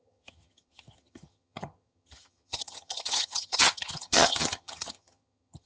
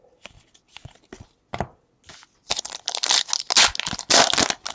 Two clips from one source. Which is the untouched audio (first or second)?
second